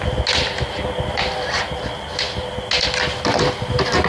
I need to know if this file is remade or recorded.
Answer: recorded